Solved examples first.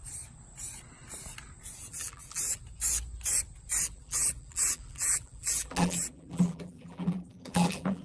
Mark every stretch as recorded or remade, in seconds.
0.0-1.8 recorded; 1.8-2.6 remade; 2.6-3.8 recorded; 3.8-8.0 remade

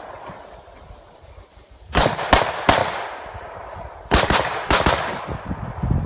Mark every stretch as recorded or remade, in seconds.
0.0-1.5 recorded; 1.5-2.2 remade; 2.2-2.8 recorded; 2.8-4.9 remade; 4.9-6.1 recorded

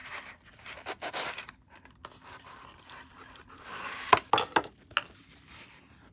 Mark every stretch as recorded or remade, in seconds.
0.0-3.6 remade; 3.6-6.1 recorded

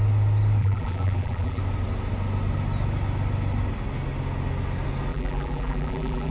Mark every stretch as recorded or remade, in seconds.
0.0-0.6 recorded; 0.6-1.6 remade; 1.6-5.1 recorded; 5.1-6.3 remade

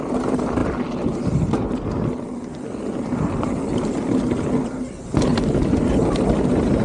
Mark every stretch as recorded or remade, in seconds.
0.0-0.6 recorded; 0.6-1.5 remade; 1.5-5.3 recorded; 5.3-5.9 remade; 5.9-6.8 recorded

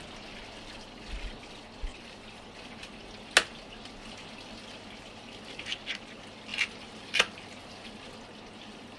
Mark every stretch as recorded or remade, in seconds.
0.0-1.9 recorded; 1.9-2.5 remade; 2.5-6.5 recorded; 6.5-7.9 remade; 7.9-9.0 recorded